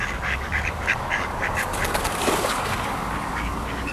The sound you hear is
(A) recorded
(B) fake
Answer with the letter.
B